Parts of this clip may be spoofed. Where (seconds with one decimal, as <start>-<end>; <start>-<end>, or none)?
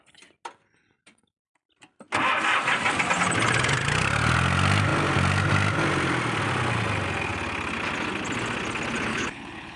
9.1-9.8